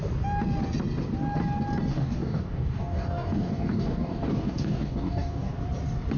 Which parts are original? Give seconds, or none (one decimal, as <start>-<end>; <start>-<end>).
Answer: 0.0-1.9; 5.6-6.2